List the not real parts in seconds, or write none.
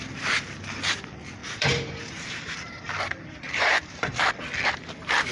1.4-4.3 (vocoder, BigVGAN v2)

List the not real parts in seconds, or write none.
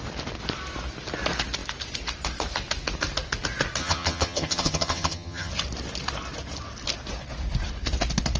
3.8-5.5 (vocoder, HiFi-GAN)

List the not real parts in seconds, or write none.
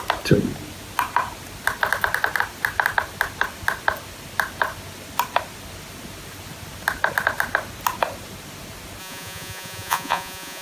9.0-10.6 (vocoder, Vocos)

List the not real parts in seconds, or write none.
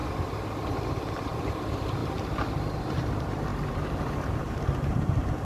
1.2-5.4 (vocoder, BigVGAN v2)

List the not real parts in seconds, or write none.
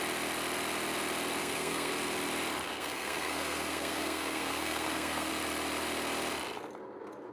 1.4-1.9 (codec, SNAC); 2.7-5.3